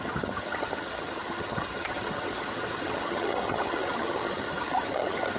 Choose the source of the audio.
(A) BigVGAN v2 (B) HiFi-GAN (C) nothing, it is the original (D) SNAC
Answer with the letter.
B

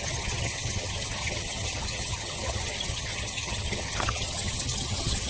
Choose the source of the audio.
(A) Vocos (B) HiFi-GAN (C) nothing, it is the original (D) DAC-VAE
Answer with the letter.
B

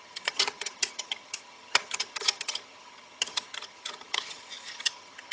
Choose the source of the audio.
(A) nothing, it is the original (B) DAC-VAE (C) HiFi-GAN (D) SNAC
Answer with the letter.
C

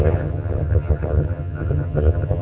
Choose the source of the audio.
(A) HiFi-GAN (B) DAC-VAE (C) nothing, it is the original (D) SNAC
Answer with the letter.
A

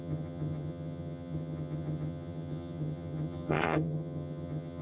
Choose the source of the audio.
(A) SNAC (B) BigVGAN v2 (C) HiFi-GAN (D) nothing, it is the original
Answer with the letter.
C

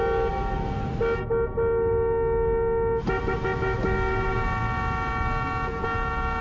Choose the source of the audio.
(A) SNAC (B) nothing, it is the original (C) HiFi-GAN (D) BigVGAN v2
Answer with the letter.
B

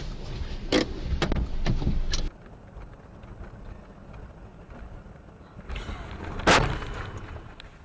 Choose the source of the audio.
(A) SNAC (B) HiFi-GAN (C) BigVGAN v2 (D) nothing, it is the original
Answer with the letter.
D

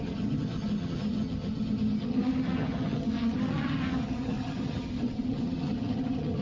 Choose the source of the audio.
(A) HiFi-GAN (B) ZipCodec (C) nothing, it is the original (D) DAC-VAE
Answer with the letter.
A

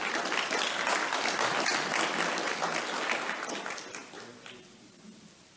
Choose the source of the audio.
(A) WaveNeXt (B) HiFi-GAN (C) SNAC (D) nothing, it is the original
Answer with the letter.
D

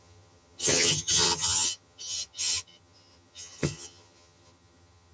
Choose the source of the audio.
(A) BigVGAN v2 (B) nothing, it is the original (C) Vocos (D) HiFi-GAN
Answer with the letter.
D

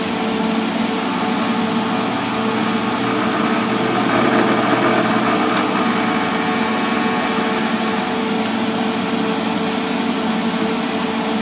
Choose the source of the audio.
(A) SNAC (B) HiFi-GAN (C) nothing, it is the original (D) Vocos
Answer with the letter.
C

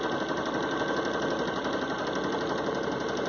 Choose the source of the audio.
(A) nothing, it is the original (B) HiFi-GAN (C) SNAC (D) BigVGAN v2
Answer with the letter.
A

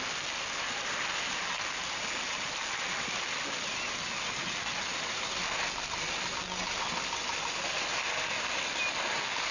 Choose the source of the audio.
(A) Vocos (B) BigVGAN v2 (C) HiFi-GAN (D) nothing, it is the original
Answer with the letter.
D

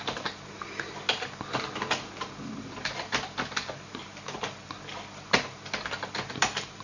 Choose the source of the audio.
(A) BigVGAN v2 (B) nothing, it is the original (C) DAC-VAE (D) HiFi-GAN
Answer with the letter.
B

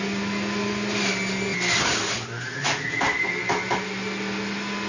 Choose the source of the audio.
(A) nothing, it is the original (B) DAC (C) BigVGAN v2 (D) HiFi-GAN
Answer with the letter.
A